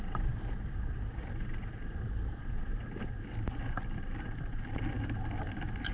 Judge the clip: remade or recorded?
recorded